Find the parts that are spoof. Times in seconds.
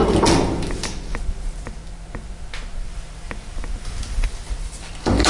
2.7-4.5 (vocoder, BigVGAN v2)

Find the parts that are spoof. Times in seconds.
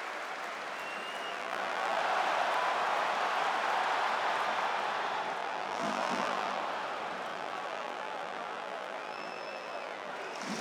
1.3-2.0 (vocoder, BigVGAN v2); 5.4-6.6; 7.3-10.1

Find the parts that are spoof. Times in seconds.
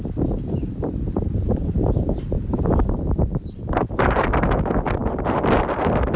0.6-4.3 (vocoder, BigVGAN v2); 5.0-5.6